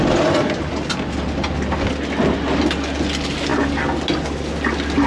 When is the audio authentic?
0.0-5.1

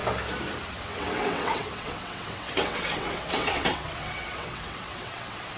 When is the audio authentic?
0.0-0.7

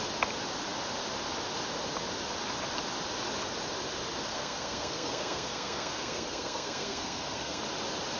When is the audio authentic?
0.0-4.3; 7.6-8.2

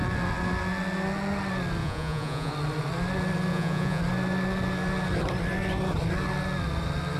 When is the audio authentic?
0.0-1.8; 2.5-3.5; 4.0-7.2